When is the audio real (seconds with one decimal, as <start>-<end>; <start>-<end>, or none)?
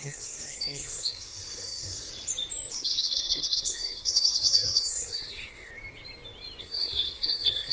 2.1-2.7; 5.7-6.6